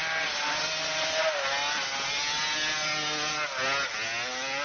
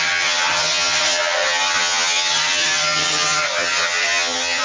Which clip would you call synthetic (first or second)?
second